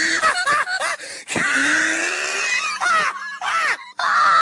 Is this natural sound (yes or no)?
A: yes